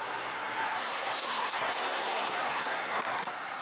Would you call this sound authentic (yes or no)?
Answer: no